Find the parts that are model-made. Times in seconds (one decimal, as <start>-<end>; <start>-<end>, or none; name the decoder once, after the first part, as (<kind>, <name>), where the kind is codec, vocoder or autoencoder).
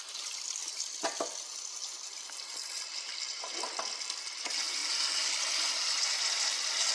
none